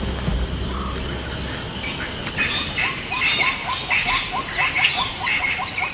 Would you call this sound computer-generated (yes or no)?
no